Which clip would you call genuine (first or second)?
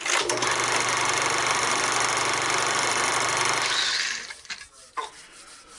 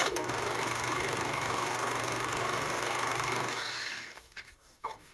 first